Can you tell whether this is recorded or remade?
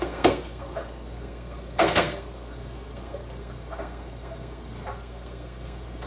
remade